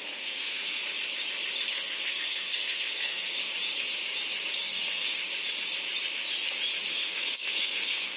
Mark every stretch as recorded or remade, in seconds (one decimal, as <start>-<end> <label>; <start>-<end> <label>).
0.0-0.8 remade; 0.8-1.7 recorded; 1.7-3.3 remade; 3.3-4.6 recorded; 4.6-5.2 remade; 5.2-6.9 recorded; 6.9-8.2 remade